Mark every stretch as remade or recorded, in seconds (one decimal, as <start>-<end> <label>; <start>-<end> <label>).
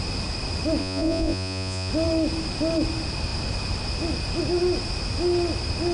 0.0-0.8 recorded; 0.8-1.9 remade; 1.9-5.9 recorded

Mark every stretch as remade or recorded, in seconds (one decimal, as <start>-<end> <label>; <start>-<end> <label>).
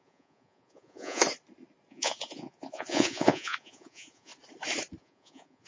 0.0-1.2 remade; 1.2-1.9 recorded; 1.9-4.3 remade; 4.3-5.0 recorded; 5.0-5.7 remade